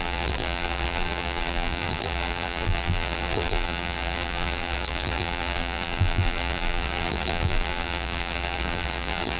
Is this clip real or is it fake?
fake